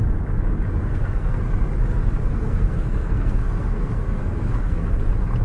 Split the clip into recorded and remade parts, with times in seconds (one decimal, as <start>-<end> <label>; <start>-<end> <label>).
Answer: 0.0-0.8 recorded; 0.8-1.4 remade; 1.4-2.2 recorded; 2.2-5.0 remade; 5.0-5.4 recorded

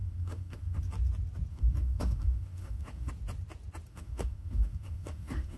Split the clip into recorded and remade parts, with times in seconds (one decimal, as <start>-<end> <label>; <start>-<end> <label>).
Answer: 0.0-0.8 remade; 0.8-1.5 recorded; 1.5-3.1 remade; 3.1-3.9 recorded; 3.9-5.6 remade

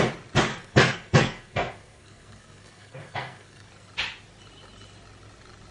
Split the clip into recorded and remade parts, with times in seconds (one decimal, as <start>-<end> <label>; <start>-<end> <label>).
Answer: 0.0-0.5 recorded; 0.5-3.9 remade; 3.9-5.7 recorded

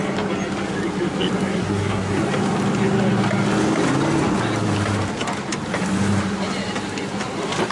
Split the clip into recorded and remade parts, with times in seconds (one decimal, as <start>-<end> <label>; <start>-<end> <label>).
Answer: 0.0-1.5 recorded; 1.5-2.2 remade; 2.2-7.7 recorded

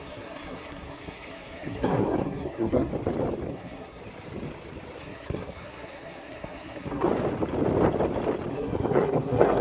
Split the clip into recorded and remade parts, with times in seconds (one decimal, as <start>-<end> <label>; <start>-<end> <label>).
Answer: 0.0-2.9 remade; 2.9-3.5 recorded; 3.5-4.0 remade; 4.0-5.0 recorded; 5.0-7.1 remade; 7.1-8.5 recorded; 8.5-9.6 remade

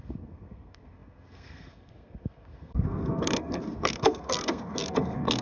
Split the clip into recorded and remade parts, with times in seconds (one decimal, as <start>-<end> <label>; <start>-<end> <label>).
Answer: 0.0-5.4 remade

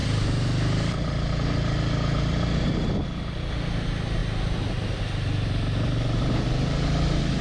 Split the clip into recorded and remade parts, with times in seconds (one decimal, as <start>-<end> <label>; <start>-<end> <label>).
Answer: 0.0-7.4 recorded

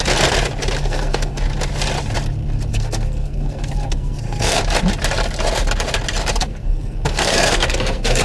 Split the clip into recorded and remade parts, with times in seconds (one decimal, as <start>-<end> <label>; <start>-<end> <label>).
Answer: 0.0-0.8 recorded; 0.8-1.4 remade; 1.4-2.7 recorded; 2.7-4.6 remade; 4.6-6.4 recorded; 6.4-8.2 remade